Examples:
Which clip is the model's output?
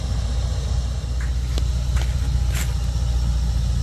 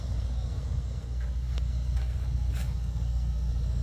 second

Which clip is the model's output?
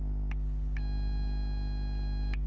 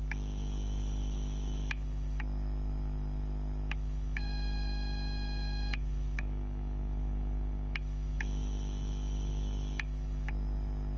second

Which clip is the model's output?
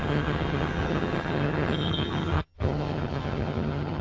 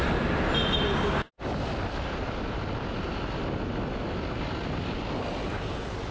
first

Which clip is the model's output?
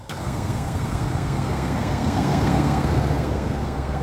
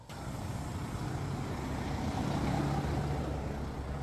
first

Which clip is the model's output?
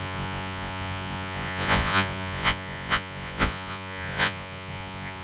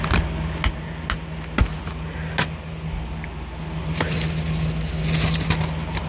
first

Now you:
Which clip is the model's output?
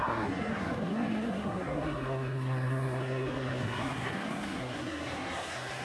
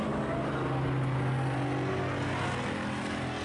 first